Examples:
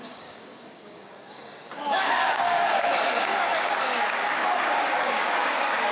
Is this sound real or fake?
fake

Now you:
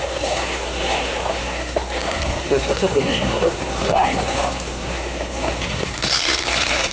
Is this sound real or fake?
fake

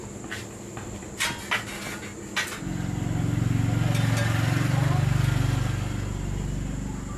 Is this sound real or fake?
real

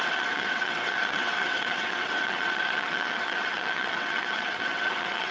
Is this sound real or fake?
fake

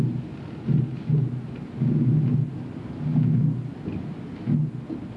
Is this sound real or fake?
real